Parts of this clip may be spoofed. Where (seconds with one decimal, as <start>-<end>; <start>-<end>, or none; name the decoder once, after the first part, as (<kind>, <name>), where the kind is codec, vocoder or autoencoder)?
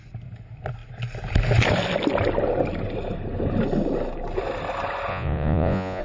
5.1-6.0 (vocoder, Vocos)